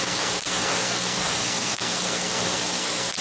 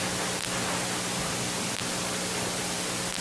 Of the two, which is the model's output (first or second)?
first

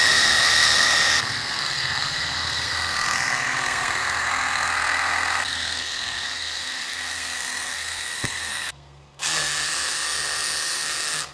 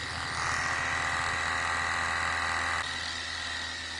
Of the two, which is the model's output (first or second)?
first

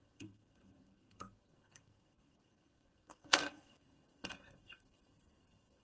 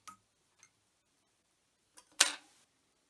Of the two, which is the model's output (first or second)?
first